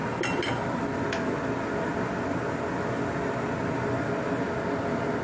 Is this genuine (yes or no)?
yes